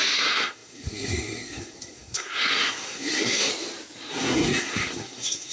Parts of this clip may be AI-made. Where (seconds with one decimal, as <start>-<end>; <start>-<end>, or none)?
0.0-3.5; 4.1-5.5